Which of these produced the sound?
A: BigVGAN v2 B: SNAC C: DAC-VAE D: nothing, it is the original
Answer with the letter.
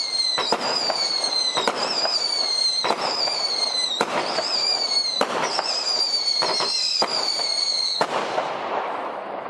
A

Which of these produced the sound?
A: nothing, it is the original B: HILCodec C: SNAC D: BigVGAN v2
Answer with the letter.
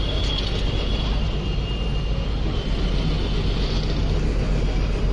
A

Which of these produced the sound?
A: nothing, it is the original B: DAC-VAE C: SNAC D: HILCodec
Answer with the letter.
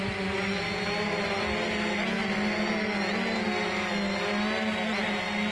A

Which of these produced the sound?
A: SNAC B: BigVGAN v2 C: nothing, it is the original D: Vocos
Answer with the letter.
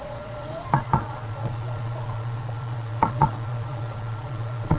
D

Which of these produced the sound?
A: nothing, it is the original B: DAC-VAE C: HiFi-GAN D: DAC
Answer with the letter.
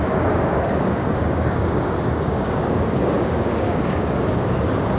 D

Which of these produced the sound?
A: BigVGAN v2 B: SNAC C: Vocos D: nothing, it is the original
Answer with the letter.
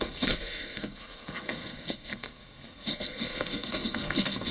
B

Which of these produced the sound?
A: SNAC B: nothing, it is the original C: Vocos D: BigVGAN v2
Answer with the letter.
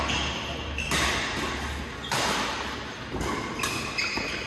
B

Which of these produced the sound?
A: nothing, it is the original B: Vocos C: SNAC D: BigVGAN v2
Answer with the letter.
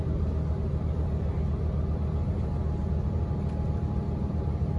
A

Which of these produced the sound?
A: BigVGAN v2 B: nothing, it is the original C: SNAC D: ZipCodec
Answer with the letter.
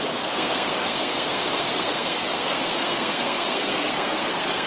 C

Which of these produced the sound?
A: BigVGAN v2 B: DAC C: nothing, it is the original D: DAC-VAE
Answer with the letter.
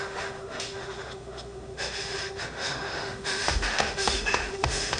D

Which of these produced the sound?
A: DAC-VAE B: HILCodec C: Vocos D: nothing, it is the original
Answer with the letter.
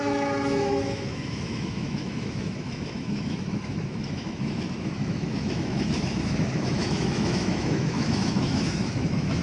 A